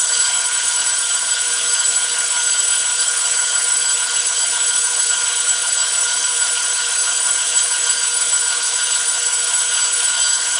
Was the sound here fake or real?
fake